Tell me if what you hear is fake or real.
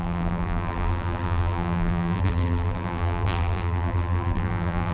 fake